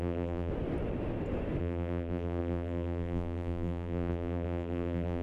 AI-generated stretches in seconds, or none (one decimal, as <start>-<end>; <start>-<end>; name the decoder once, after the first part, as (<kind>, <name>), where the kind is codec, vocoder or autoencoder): 0.0-0.5 (vocoder, BigVGAN v2); 1.6-5.2